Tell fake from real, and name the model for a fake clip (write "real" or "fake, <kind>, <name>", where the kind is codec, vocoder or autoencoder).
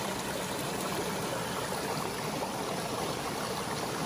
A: real